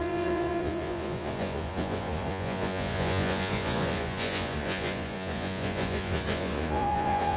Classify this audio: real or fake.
fake